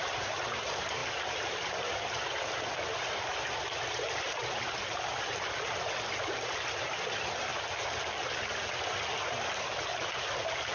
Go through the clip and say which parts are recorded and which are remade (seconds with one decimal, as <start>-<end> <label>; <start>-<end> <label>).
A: 0.0-10.7 recorded